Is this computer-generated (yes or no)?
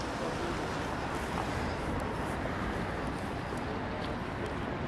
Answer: no